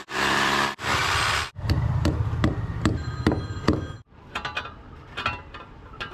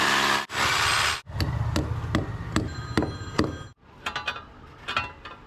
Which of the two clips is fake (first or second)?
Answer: first